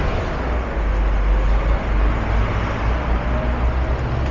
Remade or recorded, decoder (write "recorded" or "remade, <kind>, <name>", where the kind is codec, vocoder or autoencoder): recorded